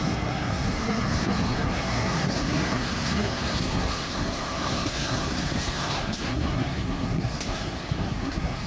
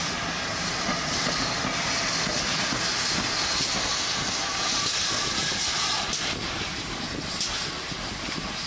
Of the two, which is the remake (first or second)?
first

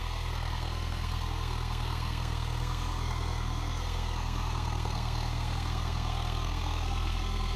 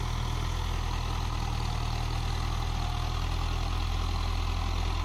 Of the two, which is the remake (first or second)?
first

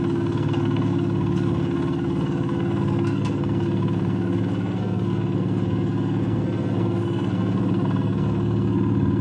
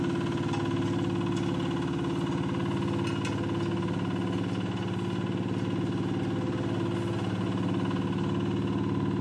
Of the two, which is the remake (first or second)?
first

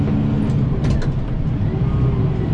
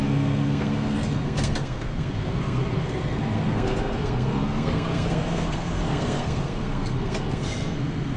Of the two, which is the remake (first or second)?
second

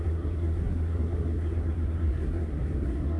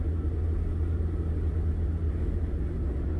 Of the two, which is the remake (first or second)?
first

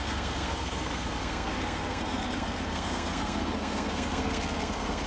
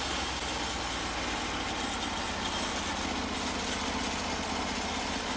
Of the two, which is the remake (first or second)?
first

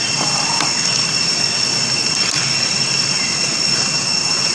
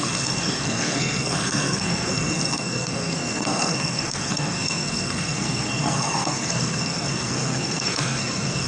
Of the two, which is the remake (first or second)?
second